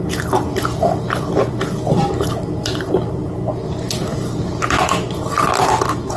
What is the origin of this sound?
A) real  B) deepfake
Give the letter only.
A